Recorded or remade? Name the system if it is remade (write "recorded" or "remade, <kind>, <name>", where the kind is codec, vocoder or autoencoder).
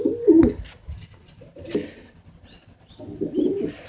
remade, vocoder, BigVGAN v2